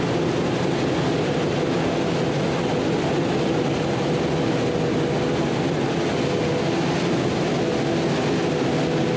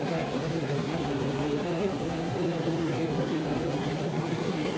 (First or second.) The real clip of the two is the first